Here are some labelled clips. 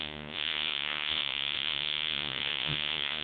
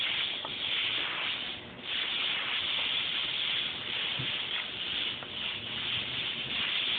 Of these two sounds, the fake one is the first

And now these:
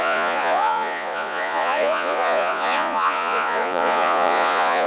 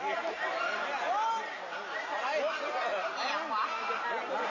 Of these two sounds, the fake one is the first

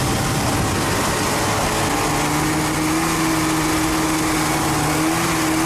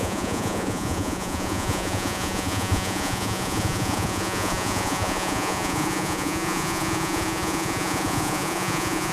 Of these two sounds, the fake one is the second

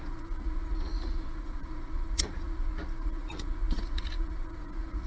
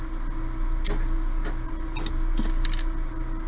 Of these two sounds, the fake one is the first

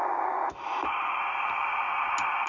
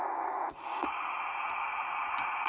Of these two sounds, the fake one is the second